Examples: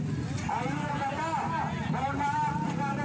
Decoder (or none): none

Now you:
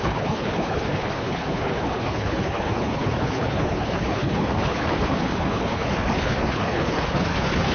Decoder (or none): codec, HILCodec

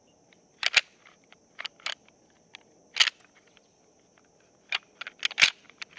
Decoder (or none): none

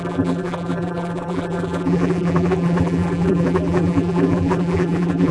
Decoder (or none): vocoder, BigVGAN v2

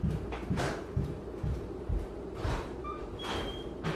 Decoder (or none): vocoder, BigVGAN v2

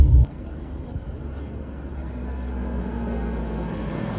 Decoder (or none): codec, SNAC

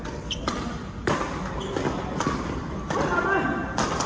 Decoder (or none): none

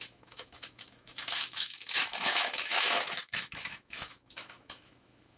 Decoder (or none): autoencoder, DAC-VAE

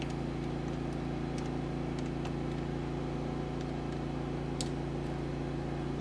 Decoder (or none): none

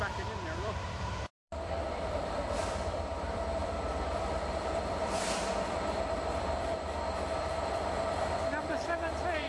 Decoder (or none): vocoder, BigVGAN v2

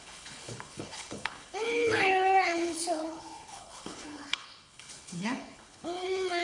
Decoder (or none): codec, HILCodec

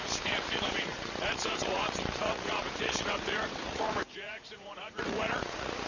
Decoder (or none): vocoder, Vocos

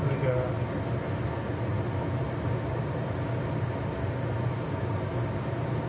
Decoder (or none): none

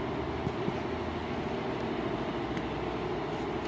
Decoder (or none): none